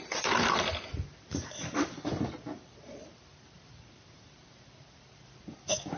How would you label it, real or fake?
fake